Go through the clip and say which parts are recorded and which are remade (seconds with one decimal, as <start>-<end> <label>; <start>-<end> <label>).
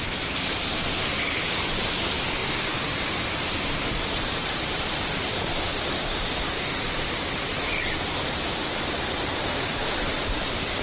0.0-10.8 recorded